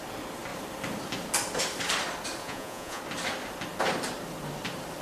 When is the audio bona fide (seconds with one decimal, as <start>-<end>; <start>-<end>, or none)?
0.0-2.4; 3.0-5.0